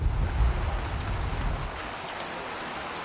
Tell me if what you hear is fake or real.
real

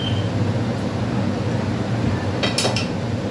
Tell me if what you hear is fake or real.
real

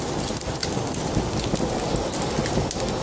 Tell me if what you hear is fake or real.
real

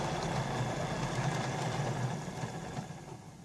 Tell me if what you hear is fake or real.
real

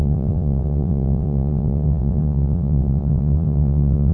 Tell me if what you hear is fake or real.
fake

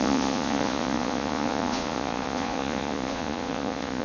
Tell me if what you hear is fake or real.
fake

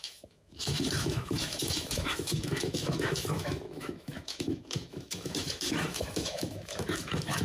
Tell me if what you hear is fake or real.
fake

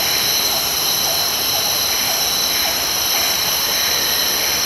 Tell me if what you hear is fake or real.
real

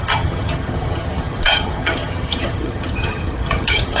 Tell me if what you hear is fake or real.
fake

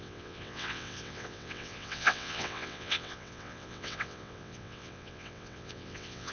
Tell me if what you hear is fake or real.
fake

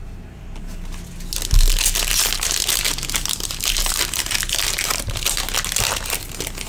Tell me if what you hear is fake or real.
real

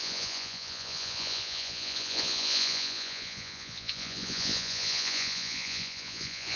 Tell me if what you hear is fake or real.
fake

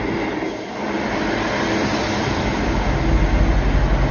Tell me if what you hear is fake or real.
real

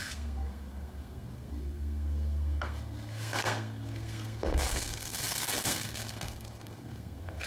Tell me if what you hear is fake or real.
fake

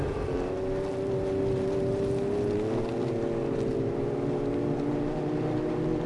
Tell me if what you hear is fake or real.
real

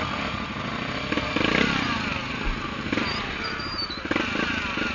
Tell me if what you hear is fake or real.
real